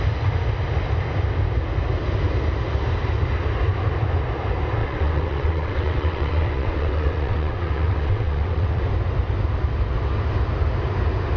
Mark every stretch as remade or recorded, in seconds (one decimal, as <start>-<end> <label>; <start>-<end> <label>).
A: 0.0-4.8 recorded; 4.8-8.8 remade; 8.8-11.4 recorded